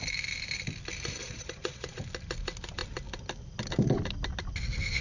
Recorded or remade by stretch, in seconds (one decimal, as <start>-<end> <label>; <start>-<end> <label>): 0.0-1.2 recorded; 1.2-2.0 remade; 2.0-5.0 recorded